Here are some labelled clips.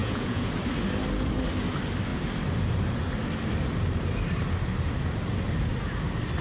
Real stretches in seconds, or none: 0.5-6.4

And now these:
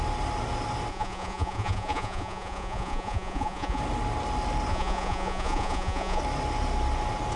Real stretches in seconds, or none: 0.0-0.9; 3.8-4.7; 6.2-7.4

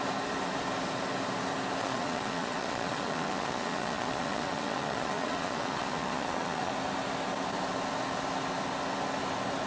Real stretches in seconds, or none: 0.0-1.8; 6.7-9.7